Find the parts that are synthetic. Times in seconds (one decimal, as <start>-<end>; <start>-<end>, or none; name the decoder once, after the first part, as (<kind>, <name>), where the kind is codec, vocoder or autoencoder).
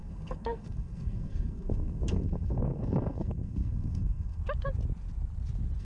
0.0-4.4 (codec, SNAC)